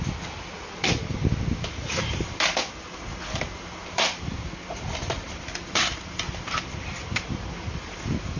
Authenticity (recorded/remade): recorded